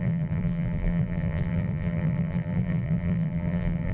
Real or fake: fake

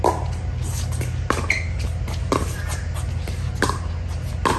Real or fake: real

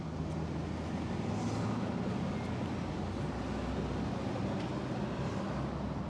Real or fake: real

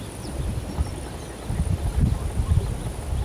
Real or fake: real